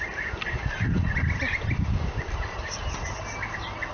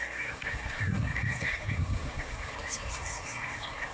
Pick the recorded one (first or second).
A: first